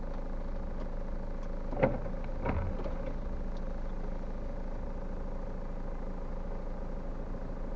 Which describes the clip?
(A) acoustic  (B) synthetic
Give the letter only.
A